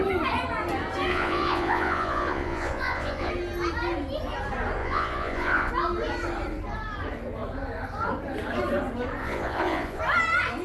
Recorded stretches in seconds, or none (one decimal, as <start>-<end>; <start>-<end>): 0.0-1.1; 3.3-4.8; 5.7-9.2; 10.0-10.6